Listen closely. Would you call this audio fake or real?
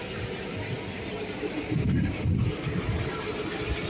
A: real